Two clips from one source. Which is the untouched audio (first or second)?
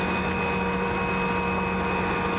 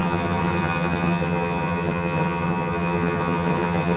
first